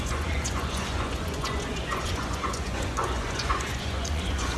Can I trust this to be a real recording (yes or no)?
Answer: no